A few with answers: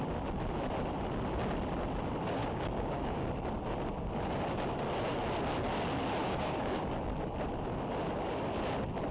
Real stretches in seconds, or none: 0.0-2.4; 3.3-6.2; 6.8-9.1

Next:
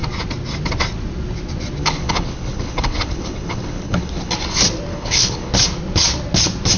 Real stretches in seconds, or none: 0.0-1.8; 4.3-4.9; 5.5-6.8

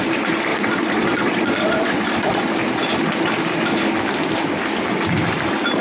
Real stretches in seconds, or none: 0.0-0.5; 2.4-5.8

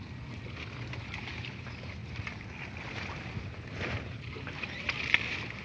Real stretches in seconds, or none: 0.0-5.6

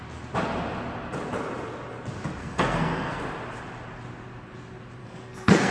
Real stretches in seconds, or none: 0.0-2.4; 3.2-5.0